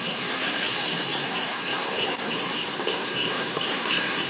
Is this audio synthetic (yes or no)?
yes